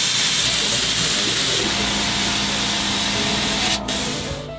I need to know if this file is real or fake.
real